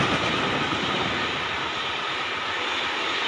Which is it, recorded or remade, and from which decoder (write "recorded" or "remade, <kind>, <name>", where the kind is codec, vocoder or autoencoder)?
recorded